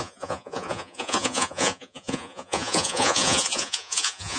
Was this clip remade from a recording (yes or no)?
yes